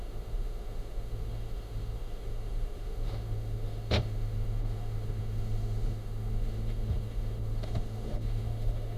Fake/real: fake